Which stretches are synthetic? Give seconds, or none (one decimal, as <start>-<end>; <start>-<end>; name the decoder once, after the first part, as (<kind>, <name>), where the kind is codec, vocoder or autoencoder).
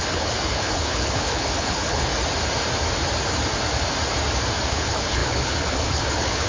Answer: 0.0-2.1 (codec, HILCodec); 4.7-6.5